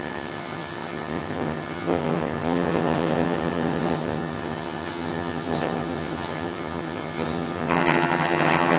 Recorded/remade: remade